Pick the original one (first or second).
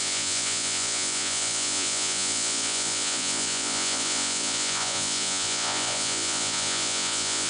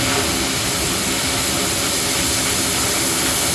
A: second